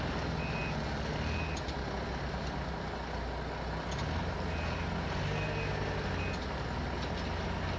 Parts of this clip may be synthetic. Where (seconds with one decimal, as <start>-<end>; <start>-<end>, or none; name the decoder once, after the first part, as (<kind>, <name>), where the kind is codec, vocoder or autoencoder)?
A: none